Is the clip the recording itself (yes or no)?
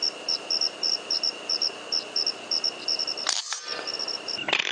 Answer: yes